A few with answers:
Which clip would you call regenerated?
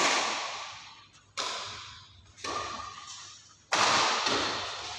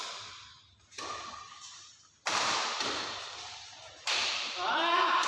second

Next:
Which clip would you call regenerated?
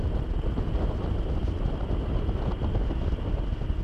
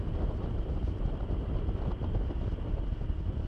second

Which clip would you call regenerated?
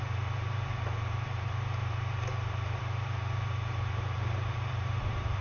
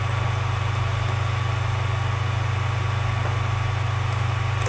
first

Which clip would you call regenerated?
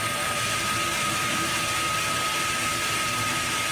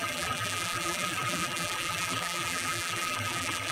second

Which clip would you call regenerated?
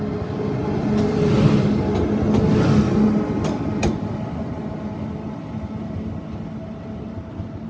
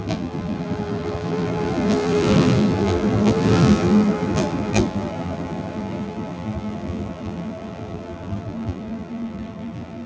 second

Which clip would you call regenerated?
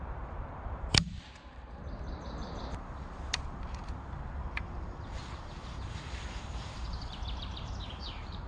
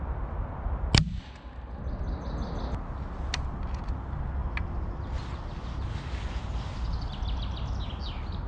first